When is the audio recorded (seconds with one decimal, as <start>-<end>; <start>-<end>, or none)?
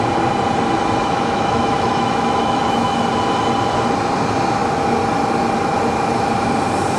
0.0-1.0; 3.1-7.0